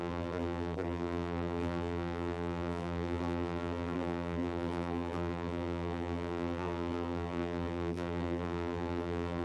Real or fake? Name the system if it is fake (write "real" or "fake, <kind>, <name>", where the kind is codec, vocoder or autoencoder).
fake, vocoder, BigVGAN v2